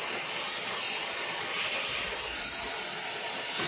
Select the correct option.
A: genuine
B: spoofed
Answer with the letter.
A